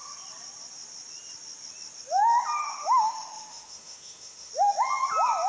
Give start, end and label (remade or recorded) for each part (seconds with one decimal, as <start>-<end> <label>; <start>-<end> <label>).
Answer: 0.0-2.6 recorded; 2.6-4.5 remade; 4.5-5.5 recorded